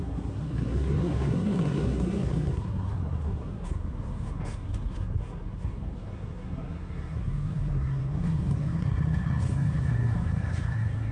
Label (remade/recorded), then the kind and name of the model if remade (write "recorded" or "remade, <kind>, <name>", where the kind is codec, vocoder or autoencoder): remade, codec, SNAC